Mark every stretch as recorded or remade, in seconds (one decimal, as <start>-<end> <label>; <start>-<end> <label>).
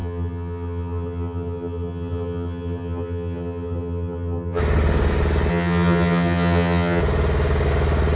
0.0-4.6 remade; 4.6-5.5 recorded; 5.5-7.0 remade; 7.0-8.2 recorded